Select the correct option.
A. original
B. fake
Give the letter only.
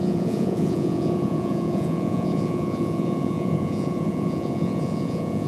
B